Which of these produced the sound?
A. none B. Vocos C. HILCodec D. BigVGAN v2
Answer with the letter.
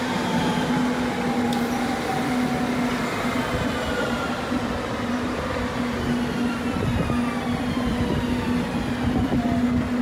A